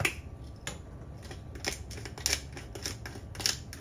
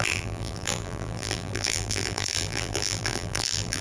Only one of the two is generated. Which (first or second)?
second